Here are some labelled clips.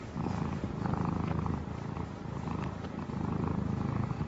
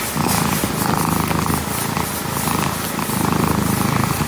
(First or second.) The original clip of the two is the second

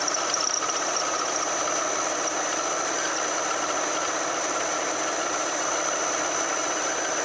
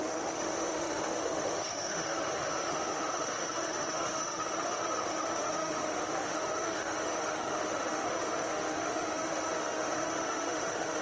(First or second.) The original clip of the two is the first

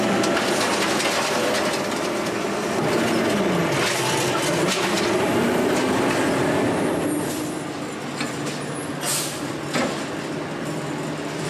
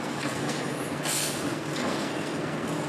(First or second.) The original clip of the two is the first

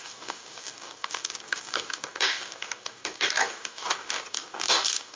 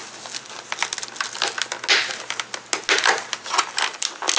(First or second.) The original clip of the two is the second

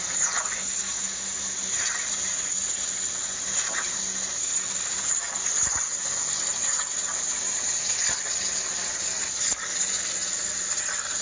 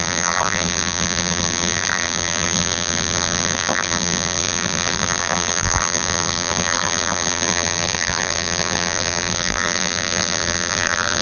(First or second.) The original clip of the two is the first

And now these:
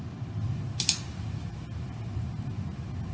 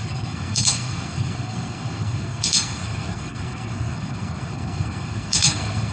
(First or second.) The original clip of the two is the first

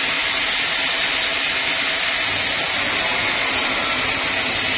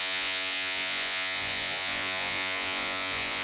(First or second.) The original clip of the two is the first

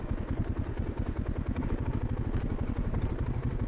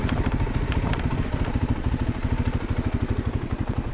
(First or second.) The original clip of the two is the first